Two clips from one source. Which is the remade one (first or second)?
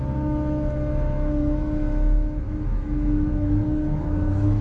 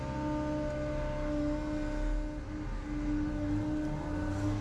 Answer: first